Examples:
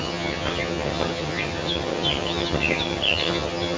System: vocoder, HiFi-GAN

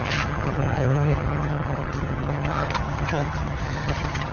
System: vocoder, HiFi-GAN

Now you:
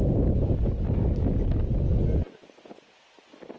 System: none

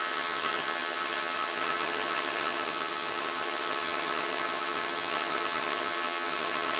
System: vocoder, HiFi-GAN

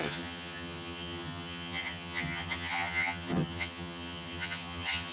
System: vocoder, HiFi-GAN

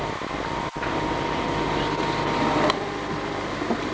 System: none